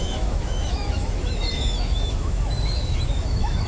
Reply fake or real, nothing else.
fake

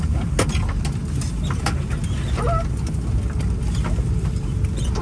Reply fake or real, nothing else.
real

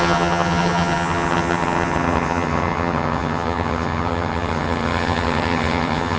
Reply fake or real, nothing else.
fake